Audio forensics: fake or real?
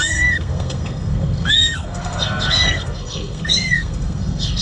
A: fake